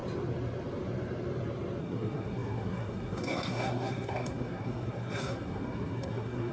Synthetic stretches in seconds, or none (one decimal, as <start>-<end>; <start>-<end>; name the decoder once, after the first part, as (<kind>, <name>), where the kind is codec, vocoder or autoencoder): 1.8-6.5 (codec, SNAC)